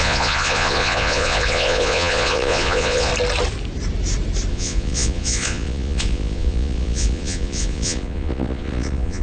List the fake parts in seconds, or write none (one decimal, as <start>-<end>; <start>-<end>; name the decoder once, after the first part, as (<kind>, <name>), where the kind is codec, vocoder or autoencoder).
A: 0.0-3.1 (vocoder, Vocos); 4.5-9.2